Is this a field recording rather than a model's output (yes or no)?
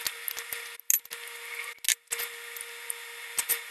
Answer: yes